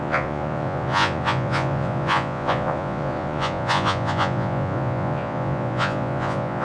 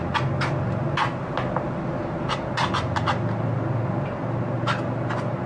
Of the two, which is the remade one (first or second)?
first